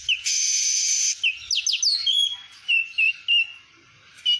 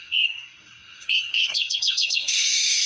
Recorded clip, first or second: first